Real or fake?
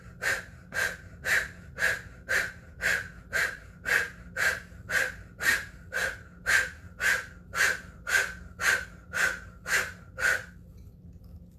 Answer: real